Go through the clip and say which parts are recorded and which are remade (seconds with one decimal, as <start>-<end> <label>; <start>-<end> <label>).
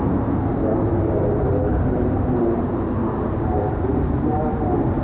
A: 0.0-1.7 recorded; 1.7-5.0 remade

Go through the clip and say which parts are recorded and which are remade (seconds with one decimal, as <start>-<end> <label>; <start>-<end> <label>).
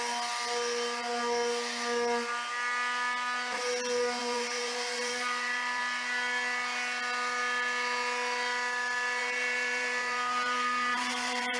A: 0.0-4.2 recorded; 4.2-5.8 remade; 5.8-9.2 recorded; 9.2-11.6 remade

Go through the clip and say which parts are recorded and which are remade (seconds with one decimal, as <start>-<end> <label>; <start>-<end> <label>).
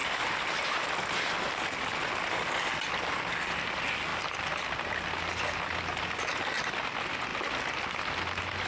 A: 0.0-4.1 recorded; 4.1-4.8 remade; 4.8-8.7 recorded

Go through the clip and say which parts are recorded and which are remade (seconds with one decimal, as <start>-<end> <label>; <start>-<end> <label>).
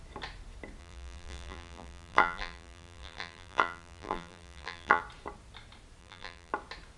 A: 0.0-0.8 recorded; 0.8-5.0 remade; 5.0-6.0 recorded; 6.0-6.5 remade; 6.5-7.0 recorded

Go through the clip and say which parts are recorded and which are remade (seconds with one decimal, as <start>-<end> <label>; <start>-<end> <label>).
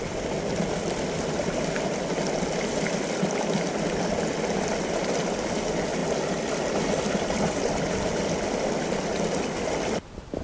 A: 0.0-10.4 recorded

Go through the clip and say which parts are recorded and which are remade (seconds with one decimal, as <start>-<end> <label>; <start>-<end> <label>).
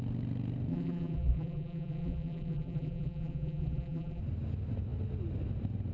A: 0.0-0.7 recorded; 0.7-4.2 remade; 4.2-5.9 recorded